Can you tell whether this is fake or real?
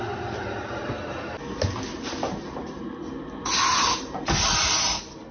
real